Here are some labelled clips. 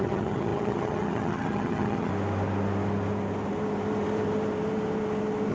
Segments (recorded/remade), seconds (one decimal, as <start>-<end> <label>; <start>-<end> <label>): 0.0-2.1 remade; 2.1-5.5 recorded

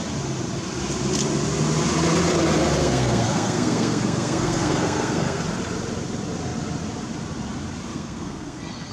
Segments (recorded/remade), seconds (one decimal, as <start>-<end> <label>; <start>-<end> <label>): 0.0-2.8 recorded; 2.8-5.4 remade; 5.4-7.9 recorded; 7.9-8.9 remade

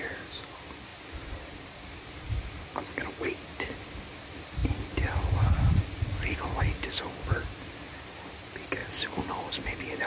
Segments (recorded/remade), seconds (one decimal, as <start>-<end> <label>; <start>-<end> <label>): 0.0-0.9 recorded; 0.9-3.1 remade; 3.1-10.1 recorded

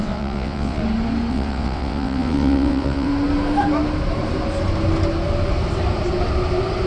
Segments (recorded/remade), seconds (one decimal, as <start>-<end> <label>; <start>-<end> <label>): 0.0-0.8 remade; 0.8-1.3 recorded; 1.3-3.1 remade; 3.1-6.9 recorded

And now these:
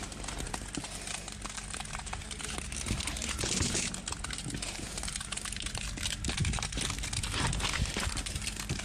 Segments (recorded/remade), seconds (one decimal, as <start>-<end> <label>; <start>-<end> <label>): 0.0-8.8 recorded

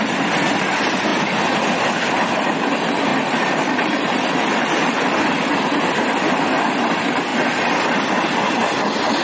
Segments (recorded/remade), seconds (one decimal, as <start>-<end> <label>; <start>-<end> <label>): 0.0-3.1 recorded; 3.1-5.2 remade; 5.2-9.2 recorded

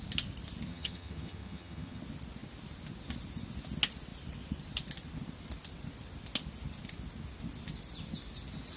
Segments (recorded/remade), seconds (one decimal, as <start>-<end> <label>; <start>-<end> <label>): 0.0-0.7 recorded; 0.7-2.0 remade; 2.0-8.8 recorded

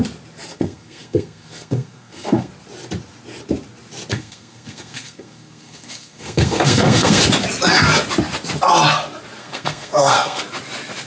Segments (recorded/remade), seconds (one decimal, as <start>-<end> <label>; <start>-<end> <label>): 0.0-0.5 recorded; 0.5-2.5 remade; 2.5-4.1 recorded; 4.1-7.2 remade; 7.2-9.4 recorded; 9.4-10.4 remade; 10.4-11.1 recorded